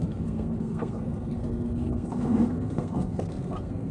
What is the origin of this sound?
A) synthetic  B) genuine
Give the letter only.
A